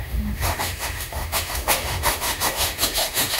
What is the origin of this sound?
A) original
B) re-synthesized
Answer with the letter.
B